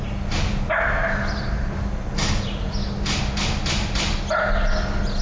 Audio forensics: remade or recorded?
recorded